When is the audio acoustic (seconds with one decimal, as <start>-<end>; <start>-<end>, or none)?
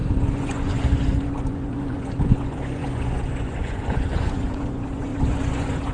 none